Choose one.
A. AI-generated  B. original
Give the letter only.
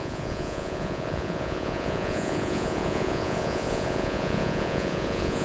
A